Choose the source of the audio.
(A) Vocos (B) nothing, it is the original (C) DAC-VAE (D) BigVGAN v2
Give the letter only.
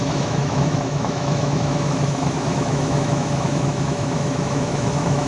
C